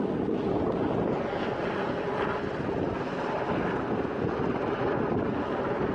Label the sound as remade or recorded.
recorded